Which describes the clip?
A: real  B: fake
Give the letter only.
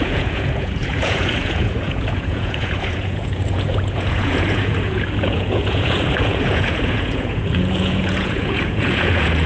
B